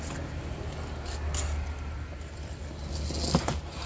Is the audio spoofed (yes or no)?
no